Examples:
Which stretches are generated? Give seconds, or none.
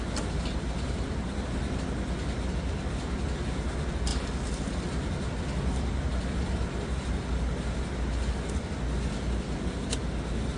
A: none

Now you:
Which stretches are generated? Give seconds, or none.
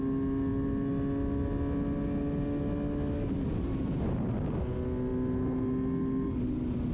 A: none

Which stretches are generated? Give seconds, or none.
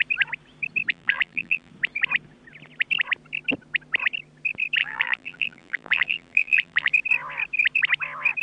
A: 0.9-1.7; 4.8-6.9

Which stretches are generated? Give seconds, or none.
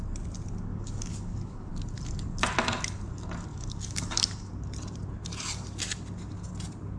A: 0.7-1.7; 3.5-4.5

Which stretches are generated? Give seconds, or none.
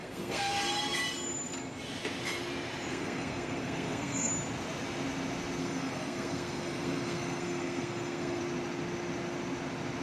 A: 0.0-0.5; 2.9-4.3; 5.6-8.4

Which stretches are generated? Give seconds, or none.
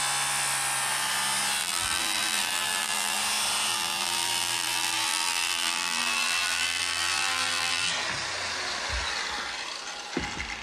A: 1.6-3.2; 3.7-7.9